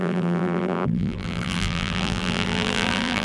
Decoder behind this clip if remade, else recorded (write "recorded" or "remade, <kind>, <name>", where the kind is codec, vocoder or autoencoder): remade, vocoder, BigVGAN v2